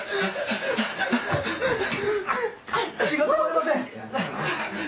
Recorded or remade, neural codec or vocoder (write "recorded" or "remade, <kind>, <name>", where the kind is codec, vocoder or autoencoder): recorded